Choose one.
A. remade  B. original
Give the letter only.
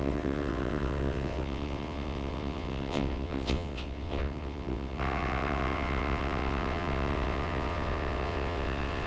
A